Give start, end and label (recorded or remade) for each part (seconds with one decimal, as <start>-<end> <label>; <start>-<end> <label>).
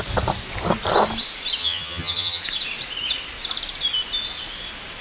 0.0-1.6 recorded; 1.6-2.4 remade; 2.4-5.0 recorded